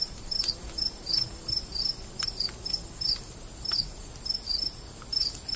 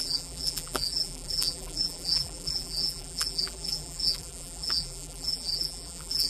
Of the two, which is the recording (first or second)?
first